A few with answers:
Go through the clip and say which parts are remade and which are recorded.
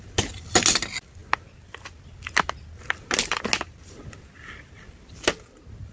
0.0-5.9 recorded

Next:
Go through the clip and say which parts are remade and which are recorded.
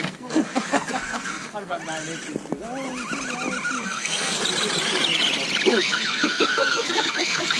0.0-1.8 remade; 1.8-3.8 recorded; 3.8-4.4 remade; 4.4-5.7 recorded; 5.7-7.6 remade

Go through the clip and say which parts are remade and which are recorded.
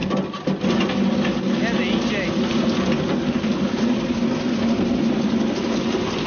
0.0-6.3 recorded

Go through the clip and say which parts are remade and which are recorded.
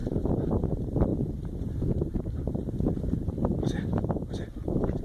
0.0-5.0 remade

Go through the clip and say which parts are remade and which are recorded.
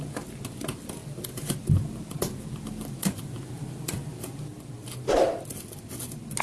0.0-6.4 recorded